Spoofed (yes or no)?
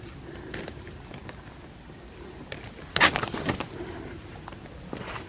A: no